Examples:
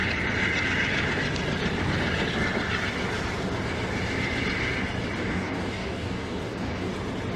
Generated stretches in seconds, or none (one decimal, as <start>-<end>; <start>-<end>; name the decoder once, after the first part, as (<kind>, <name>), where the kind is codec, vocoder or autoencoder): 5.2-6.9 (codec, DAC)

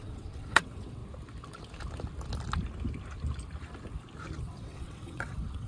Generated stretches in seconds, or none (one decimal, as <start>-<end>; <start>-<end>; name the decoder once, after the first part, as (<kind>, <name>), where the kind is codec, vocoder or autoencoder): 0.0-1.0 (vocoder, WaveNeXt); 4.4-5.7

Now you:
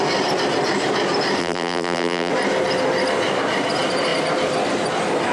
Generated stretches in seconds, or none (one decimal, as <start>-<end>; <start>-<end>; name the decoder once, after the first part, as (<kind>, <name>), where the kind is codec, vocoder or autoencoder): 1.4-2.3 (vocoder, BigVGAN v2)